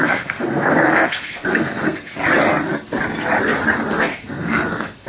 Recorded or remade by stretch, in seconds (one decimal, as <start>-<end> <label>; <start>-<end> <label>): 0.0-2.1 remade; 2.1-3.9 recorded; 3.9-5.1 remade